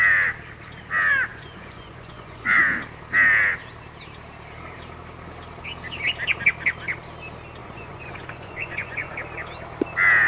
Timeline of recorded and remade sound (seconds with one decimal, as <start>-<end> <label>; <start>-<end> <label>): 0.0-1.3 recorded; 1.3-2.6 remade; 2.6-7.6 recorded; 7.6-9.1 remade; 9.1-10.3 recorded